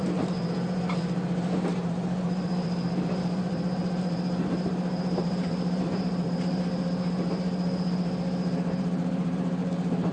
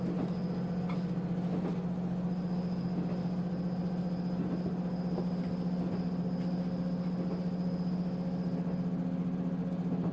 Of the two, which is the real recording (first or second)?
second